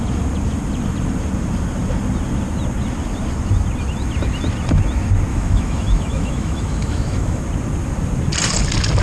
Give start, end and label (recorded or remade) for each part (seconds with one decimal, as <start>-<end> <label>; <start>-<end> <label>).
0.0-5.3 recorded; 5.3-7.4 remade; 7.4-9.0 recorded